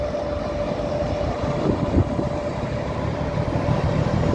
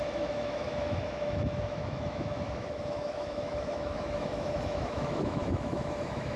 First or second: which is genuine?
first